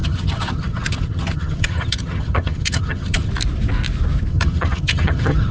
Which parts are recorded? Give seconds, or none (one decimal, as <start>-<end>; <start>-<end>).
3.3-4.3